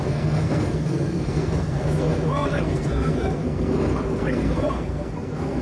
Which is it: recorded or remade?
remade